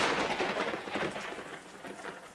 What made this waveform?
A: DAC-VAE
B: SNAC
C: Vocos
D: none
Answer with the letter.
C